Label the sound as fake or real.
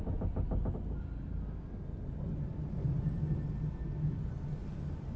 real